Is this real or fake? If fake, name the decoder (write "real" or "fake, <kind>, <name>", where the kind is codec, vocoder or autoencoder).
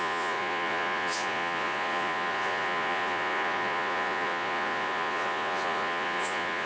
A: fake, vocoder, Vocos